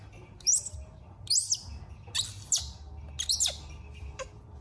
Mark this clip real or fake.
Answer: real